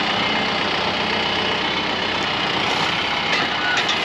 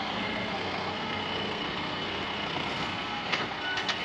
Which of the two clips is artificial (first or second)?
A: second